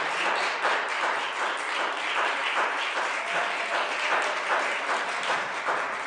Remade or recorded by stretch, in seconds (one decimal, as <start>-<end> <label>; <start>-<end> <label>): 0.0-2.4 remade; 2.4-4.1 recorded; 4.1-6.1 remade